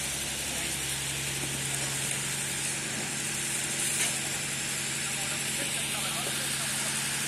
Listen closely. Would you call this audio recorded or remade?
recorded